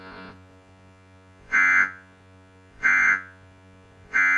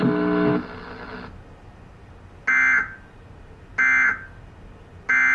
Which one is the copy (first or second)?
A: first